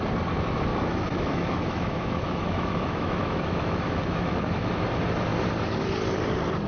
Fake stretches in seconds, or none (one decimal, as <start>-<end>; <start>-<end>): 0.7-4.7

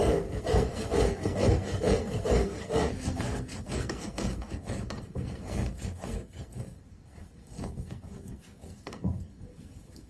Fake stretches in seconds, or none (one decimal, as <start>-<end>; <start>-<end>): 0.0-10.1

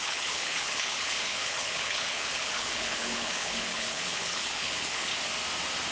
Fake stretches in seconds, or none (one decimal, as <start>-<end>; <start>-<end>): 0.0-5.1

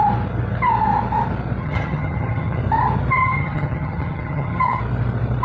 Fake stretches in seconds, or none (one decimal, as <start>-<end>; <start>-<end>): 1.6-2.6; 3.2-4.8

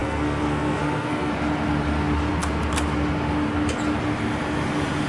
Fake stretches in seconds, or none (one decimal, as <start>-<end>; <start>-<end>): 0.0-1.3